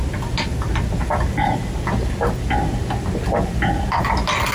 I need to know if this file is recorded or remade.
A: recorded